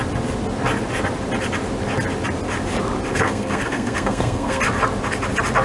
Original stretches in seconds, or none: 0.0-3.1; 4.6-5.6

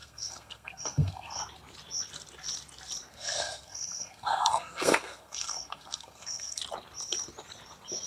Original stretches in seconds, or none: 1.4-3.1; 6.6-8.1

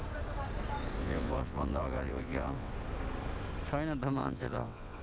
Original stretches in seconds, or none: 0.0-1.0; 2.7-4.2

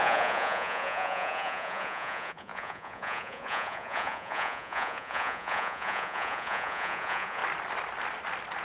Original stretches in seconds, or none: 7.4-8.6

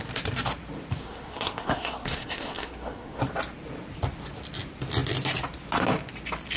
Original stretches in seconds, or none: 0.0-1.0; 3.2-6.6

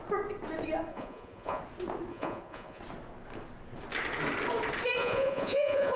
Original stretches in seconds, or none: 0.0-0.9; 1.6-2.1; 2.8-5.0